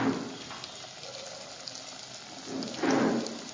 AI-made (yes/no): no